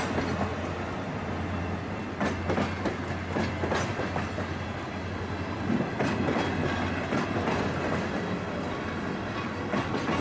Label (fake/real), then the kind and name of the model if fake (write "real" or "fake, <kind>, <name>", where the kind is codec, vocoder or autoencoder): real